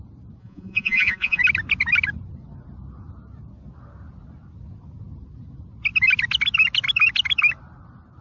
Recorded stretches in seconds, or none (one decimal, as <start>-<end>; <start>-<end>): 0.0-0.4; 1.4-8.2